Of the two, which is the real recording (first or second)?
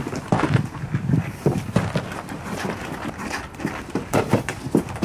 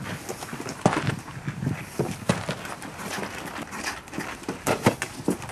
second